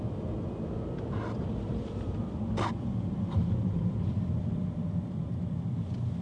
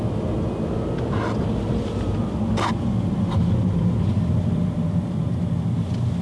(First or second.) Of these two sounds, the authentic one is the second